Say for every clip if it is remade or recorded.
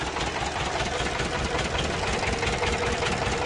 recorded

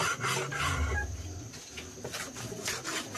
recorded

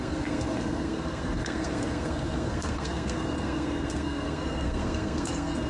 remade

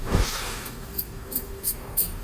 remade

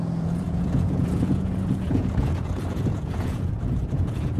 remade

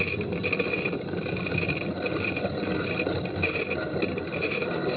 recorded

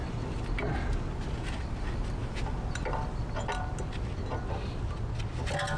recorded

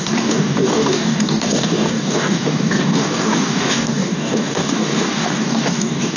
remade